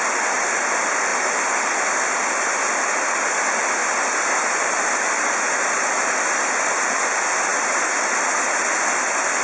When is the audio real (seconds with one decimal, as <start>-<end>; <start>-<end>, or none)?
0.0-1.1; 2.2-9.4

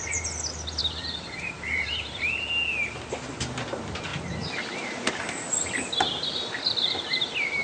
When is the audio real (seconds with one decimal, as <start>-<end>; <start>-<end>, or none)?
0.0-0.8; 2.3-7.6

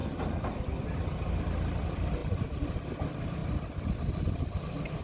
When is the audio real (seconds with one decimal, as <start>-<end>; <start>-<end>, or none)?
0.7-2.2; 2.8-5.0

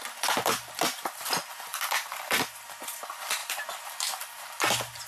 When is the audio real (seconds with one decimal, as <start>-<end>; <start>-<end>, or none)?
0.0-5.1

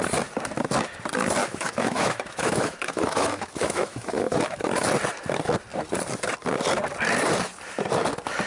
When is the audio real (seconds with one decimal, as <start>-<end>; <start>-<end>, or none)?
0.0-1.4; 4.6-8.5